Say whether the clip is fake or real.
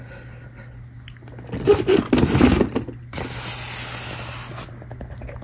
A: real